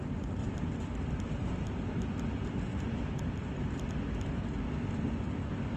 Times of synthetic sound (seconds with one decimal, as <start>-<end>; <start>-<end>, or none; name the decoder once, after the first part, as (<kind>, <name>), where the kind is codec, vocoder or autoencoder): 0.4-3.9 (vocoder, BigVGAN v2)